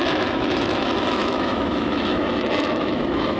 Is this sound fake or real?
fake